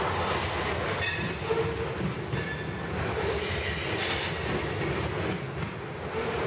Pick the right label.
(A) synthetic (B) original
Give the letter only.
B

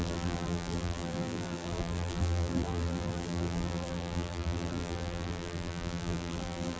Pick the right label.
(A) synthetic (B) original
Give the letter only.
A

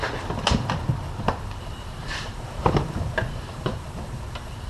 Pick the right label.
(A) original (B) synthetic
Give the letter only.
B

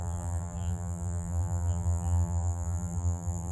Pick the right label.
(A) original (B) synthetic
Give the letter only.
B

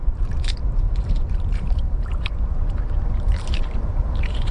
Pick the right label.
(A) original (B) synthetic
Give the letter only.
B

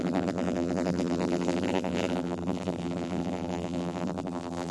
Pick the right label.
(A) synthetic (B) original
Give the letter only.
A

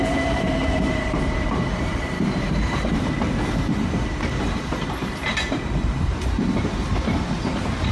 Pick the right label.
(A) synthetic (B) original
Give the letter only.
A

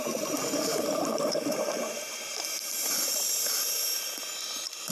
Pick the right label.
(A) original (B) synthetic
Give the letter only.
B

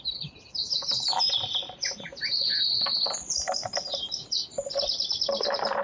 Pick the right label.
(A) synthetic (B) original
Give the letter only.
A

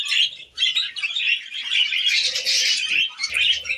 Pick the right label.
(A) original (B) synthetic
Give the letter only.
A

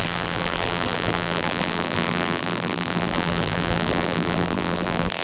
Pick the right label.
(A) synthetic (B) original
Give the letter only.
A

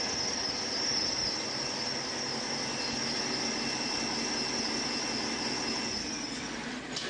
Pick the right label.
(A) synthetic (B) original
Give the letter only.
B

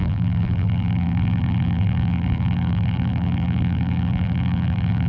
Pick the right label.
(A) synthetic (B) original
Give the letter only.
A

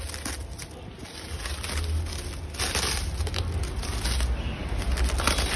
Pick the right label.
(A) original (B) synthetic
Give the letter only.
A